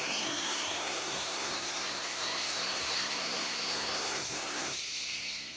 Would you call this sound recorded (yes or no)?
no